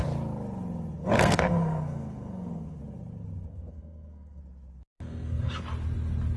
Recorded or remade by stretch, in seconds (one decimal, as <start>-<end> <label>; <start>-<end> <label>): 0.0-1.0 recorded; 1.0-2.8 remade; 2.8-3.5 recorded; 3.5-4.4 remade; 4.4-4.9 recorded; 4.9-5.6 remade; 5.6-6.4 recorded